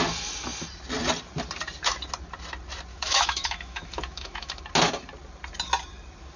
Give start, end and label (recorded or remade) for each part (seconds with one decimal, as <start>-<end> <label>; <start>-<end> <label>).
0.0-2.9 recorded; 2.9-4.6 remade; 4.6-6.4 recorded